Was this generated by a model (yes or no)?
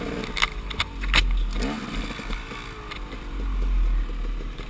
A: no